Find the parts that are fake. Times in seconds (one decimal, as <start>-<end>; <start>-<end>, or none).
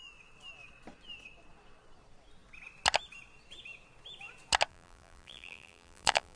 4.7-6.4